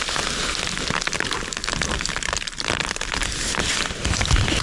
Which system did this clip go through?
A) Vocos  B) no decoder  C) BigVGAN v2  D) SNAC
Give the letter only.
B